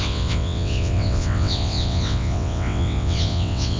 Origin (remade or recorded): remade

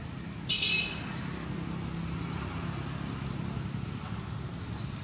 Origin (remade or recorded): recorded